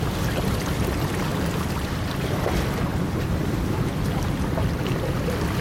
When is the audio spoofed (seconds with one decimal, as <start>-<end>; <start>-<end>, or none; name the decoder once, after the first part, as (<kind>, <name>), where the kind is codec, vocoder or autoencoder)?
1.3-2.5 (vocoder, BigVGAN v2); 2.9-4.1